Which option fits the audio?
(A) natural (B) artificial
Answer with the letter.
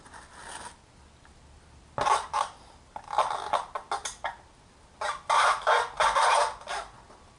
A